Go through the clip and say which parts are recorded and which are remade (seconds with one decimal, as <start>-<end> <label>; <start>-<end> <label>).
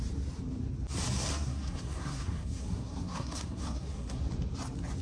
0.0-1.3 recorded; 1.3-4.2 remade; 4.2-5.0 recorded